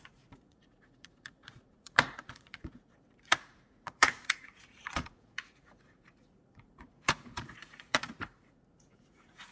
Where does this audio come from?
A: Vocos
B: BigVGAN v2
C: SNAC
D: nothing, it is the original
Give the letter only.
A